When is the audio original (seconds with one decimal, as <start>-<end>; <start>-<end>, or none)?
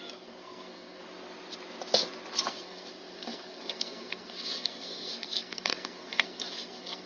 1.0-2.5